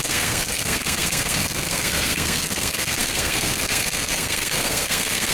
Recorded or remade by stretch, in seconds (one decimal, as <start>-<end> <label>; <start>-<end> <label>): 0.0-5.3 remade